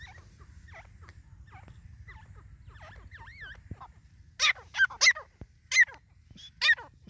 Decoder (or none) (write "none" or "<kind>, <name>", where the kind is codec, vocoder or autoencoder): none